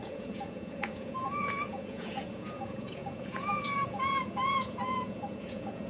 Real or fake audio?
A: fake